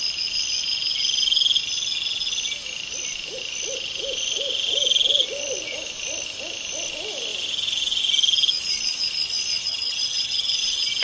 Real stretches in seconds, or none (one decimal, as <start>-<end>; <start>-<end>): 0.0-9.6; 10.6-11.0